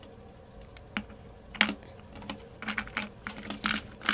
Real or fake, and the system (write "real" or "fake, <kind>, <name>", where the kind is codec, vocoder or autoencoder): real